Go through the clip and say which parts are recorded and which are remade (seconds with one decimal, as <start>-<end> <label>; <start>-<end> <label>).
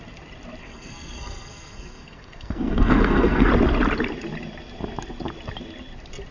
0.0-0.6 recorded; 0.6-3.5 remade; 3.5-6.3 recorded